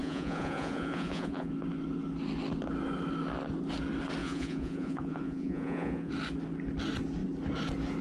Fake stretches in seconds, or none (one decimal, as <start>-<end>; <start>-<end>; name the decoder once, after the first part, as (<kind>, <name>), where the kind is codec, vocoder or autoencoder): 0.0-1.5 (vocoder, Vocos); 4.2-6.1

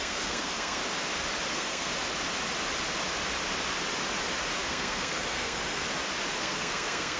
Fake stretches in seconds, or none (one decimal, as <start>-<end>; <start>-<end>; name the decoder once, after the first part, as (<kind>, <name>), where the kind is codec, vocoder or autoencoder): 0.0-0.8 (codec, SNAC); 1.5-1.9; 4.7-5.8; 6.4-7.2